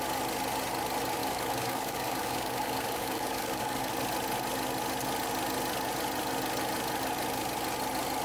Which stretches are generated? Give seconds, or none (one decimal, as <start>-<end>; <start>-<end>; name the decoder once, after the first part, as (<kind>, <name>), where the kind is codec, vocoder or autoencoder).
1.2-3.9 (codec, DAC)